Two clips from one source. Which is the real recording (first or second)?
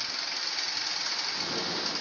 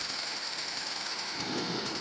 first